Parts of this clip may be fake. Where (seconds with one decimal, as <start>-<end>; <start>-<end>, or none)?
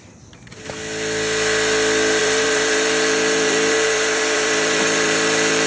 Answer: 2.2-5.7